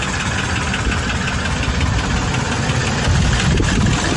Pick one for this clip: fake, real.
real